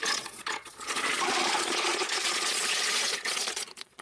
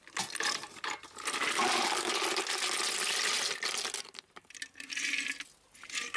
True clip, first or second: second